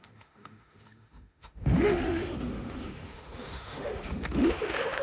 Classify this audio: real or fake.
fake